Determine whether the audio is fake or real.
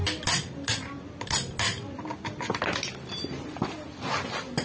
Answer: real